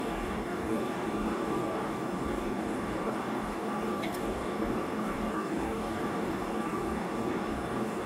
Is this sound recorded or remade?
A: remade